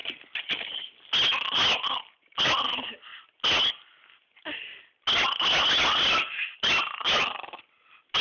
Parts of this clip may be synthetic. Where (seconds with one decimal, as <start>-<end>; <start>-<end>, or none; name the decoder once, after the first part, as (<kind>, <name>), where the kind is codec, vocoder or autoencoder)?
none